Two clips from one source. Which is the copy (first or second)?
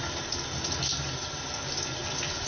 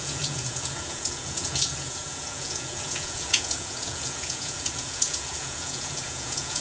second